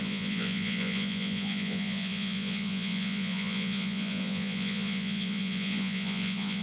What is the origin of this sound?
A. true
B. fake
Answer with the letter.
B